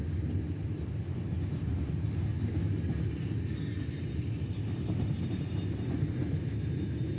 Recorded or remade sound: recorded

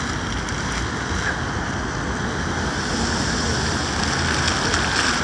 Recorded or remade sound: recorded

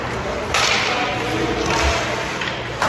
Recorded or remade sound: recorded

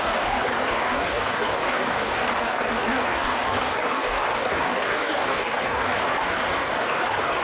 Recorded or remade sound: remade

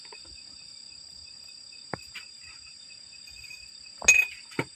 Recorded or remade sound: recorded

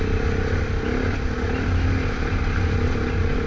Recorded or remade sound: recorded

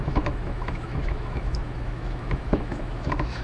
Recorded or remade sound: remade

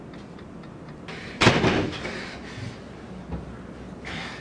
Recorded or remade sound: recorded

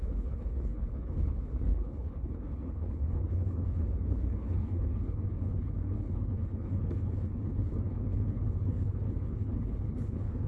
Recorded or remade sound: remade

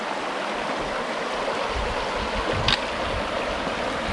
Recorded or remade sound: recorded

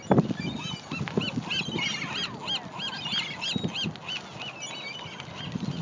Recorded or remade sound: recorded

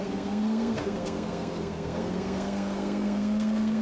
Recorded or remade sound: remade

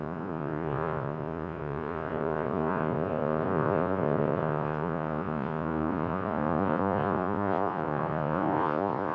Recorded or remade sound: remade